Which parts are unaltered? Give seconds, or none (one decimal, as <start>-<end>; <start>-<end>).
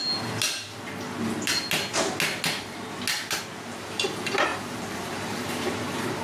0.0-3.7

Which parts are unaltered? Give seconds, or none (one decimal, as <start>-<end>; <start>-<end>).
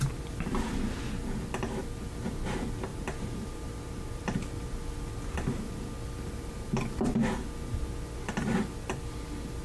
0.0-2.9; 4.2-9.6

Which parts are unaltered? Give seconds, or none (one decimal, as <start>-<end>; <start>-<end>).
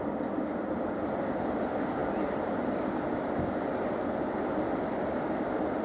none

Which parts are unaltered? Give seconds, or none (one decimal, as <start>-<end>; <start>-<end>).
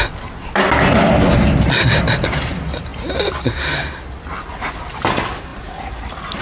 0.0-6.4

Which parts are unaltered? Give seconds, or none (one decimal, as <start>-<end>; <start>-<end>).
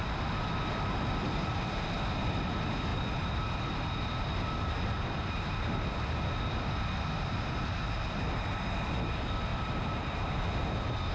0.0-2.9; 3.7-9.5; 10.7-11.1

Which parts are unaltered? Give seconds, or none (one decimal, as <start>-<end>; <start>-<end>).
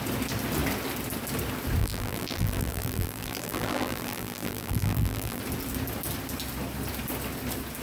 0.0-1.8; 5.4-7.8